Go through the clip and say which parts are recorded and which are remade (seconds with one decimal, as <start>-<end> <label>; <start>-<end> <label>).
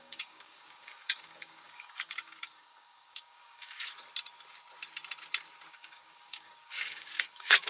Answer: 0.0-3.9 remade; 3.9-5.7 recorded; 5.7-7.7 remade